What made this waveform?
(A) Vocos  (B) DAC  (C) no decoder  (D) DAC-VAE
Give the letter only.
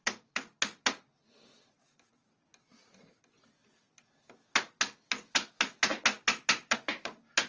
C